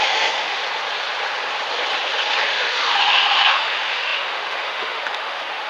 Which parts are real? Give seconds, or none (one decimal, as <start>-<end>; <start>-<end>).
0.6-2.4